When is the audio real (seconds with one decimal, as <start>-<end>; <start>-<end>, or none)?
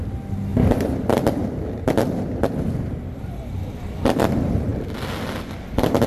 0.0-6.1